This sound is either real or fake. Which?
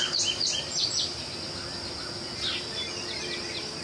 real